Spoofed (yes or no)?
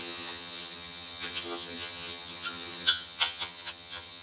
yes